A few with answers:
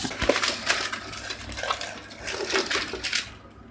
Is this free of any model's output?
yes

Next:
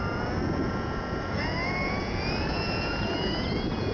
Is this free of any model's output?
no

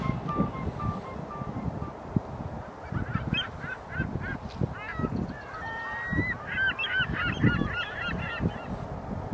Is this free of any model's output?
yes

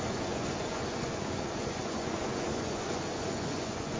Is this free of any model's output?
no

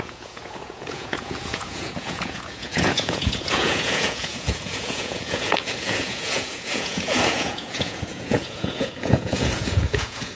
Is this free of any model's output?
no